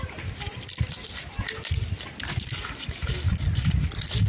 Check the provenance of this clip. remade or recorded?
recorded